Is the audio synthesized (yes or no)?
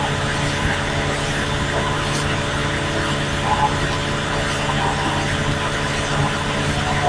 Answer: no